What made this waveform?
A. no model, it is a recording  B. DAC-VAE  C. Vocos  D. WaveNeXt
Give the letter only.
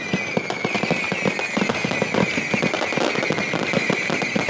A